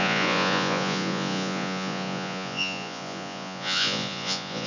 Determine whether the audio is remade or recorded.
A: remade